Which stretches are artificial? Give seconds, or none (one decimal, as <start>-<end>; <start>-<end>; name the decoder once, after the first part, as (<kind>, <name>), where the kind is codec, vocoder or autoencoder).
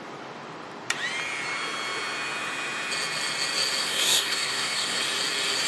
3.8-5.0 (codec, SNAC)